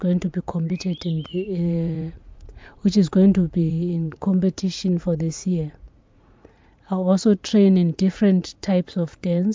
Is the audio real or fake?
fake